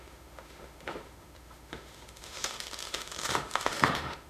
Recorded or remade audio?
remade